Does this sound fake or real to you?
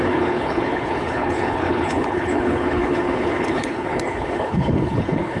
fake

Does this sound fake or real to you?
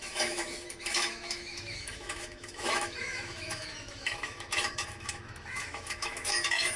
fake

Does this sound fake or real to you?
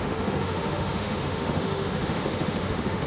fake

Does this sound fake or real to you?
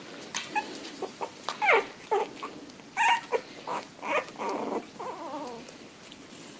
real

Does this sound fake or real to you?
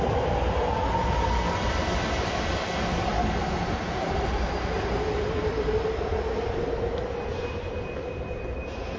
real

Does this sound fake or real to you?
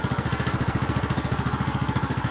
fake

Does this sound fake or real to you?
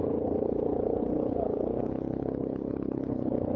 fake